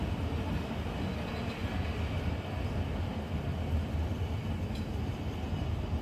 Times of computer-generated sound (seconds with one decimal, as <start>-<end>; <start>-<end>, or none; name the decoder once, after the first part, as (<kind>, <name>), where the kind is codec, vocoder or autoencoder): none